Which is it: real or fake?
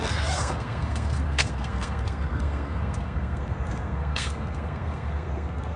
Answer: fake